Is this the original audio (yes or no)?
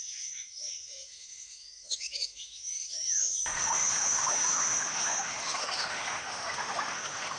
no